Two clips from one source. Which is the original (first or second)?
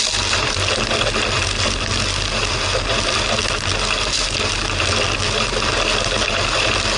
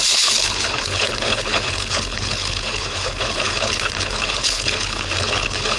first